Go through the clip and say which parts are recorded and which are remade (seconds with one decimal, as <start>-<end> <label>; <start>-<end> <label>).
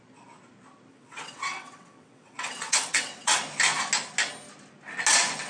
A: 0.0-0.9 recorded; 0.9-3.4 remade; 3.4-5.5 recorded